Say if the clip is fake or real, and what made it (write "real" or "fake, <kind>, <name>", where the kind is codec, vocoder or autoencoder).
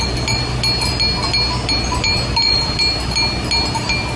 real